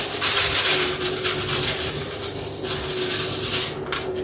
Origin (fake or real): real